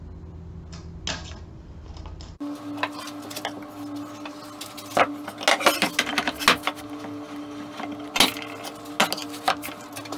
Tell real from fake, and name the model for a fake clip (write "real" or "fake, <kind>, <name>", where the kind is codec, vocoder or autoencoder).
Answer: real